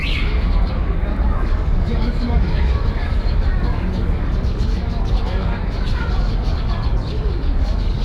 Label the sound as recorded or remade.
remade